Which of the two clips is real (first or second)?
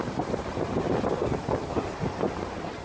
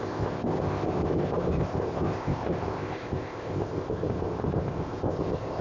first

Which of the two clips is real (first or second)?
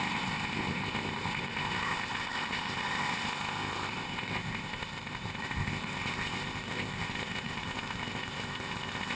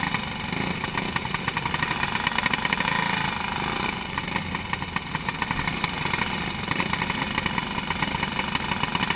second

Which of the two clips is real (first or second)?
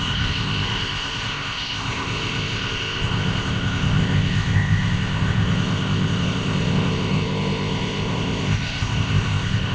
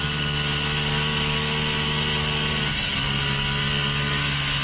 second